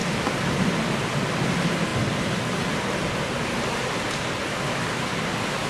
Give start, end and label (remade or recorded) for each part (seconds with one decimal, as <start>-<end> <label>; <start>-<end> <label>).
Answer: 0.0-5.7 recorded